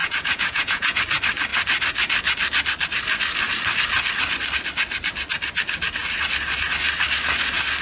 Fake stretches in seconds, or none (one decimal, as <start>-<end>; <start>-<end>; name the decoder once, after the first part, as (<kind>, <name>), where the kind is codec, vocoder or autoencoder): 0.0-1.0 (vocoder, Vocos)